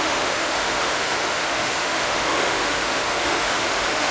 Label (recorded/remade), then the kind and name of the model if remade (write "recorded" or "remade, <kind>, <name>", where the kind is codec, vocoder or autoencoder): remade, autoencoder, DAC-VAE